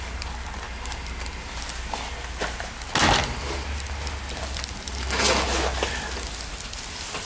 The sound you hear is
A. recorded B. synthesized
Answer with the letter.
A